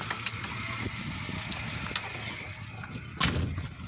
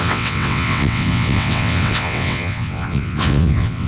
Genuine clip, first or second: first